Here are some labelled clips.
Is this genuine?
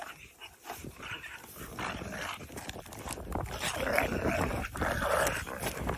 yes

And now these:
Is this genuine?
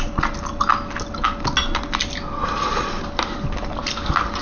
yes